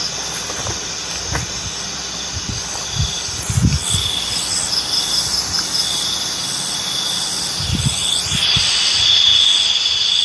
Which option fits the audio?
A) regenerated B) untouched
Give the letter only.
B